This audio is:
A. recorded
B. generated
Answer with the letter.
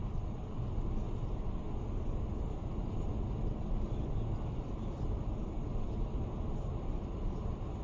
A